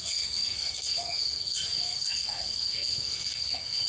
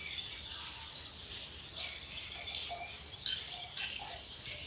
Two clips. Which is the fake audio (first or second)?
first